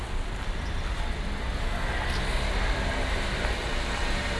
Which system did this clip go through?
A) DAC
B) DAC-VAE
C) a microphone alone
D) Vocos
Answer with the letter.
C